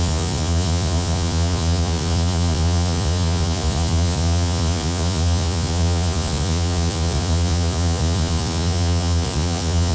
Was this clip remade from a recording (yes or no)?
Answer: yes